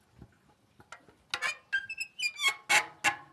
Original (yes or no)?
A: yes